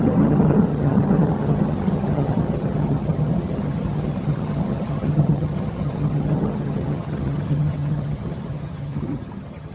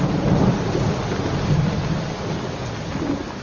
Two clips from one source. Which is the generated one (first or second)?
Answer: first